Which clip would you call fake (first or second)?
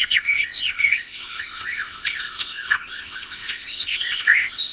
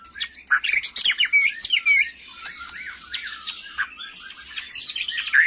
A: first